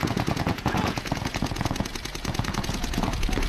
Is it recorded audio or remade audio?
remade